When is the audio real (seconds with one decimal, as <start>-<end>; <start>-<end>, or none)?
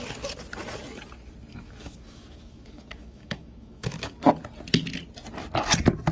0.0-1.5; 4.2-6.1